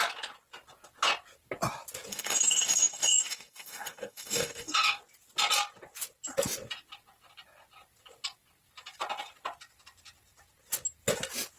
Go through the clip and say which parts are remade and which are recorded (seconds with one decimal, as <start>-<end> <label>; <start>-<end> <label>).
0.0-2.1 recorded; 2.1-5.0 remade; 5.0-11.6 recorded